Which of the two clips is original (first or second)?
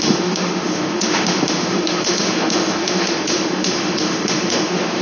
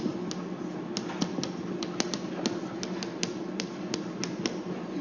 second